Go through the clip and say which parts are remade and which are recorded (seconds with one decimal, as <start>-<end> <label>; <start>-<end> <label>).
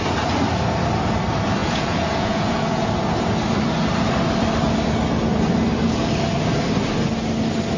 0.0-1.6 recorded; 1.6-2.9 remade; 2.9-7.8 recorded